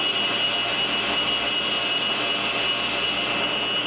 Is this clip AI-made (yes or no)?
no